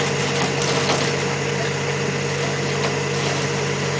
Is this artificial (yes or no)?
no